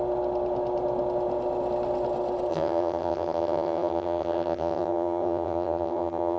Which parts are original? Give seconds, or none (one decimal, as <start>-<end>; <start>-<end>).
0.0-2.5